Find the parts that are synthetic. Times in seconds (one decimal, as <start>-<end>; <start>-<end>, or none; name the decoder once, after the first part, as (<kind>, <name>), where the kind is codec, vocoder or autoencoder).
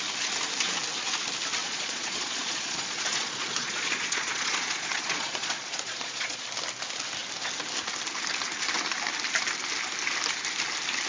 1.6-6.4 (vocoder, Vocos)